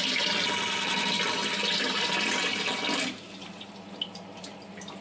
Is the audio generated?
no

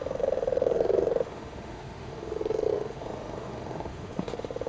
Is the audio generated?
yes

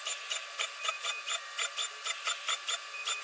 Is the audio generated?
no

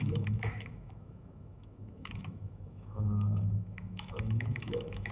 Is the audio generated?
yes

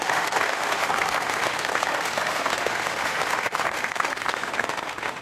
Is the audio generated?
yes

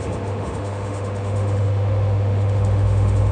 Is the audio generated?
yes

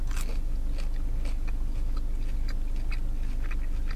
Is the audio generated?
no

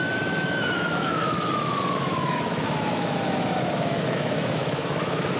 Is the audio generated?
yes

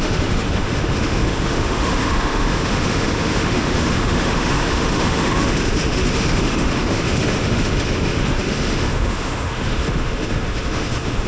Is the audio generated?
yes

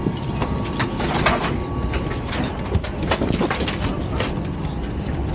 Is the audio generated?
no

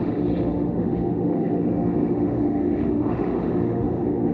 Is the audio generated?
yes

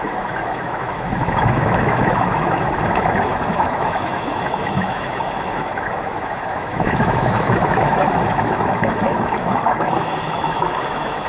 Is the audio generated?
yes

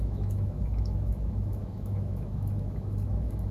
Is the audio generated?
yes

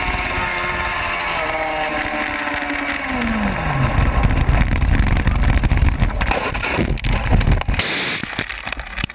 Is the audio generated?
no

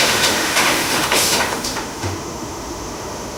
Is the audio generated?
yes